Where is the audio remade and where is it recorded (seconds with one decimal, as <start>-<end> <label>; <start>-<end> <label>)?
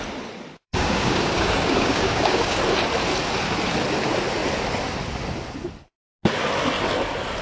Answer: 0.0-0.6 recorded; 0.6-2.6 remade; 2.6-7.4 recorded